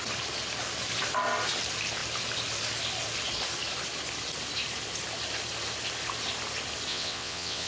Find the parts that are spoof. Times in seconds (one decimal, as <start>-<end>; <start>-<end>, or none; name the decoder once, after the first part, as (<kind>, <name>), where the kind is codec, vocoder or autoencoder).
6.9-7.7 (vocoder, WaveNeXt)